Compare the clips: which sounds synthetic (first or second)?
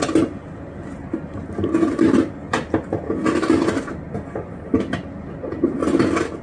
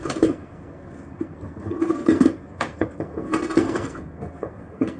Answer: second